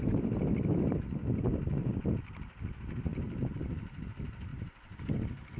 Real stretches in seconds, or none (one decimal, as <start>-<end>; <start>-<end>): 0.0-1.5; 2.0-3.1; 4.1-4.5; 5.0-5.6